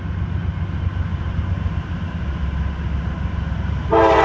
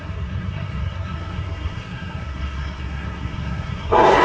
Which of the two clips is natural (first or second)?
first